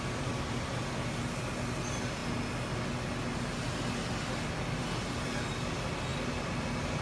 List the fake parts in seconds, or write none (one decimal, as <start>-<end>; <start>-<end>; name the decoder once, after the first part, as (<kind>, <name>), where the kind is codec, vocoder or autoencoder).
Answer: none